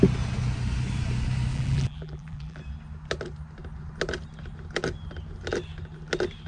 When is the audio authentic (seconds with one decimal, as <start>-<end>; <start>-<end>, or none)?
0.0-1.5; 2.6-6.5